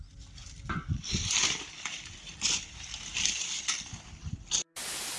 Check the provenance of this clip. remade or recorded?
recorded